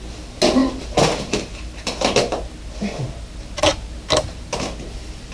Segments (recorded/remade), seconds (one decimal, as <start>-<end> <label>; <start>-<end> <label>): 0.0-5.3 recorded